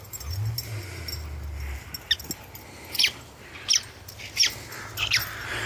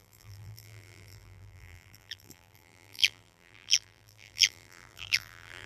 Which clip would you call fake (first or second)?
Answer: second